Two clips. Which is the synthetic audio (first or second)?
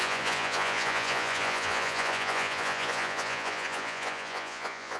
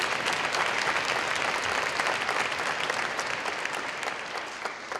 first